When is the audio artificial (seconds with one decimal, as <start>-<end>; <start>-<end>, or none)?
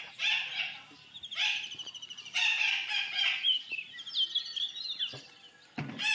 0.5-3.8